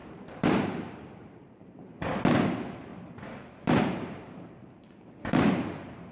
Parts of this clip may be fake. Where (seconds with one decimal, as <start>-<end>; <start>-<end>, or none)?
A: 0.0-1.7; 2.9-5.4